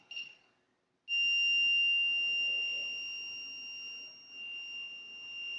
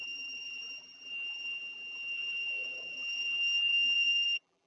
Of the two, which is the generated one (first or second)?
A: second